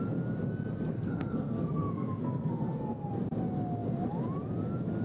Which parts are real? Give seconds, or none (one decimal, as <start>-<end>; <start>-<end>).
0.0-0.9; 3.1-5.0